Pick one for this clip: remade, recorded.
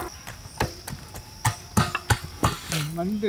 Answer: recorded